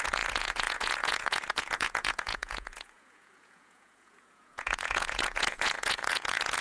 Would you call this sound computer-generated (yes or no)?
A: yes